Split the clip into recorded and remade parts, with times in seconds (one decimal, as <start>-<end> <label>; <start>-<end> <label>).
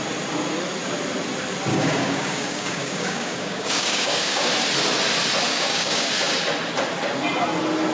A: 0.0-1.7 recorded; 1.7-4.5 remade; 4.5-5.5 recorded; 5.5-6.1 remade; 6.1-7.9 recorded